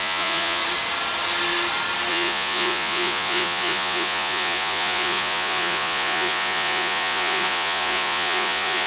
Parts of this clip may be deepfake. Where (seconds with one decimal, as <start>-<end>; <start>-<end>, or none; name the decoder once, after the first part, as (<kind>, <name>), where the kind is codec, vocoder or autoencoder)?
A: 0.0-0.6 (vocoder, Vocos); 2.1-8.9